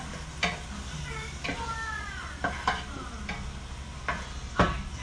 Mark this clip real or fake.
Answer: real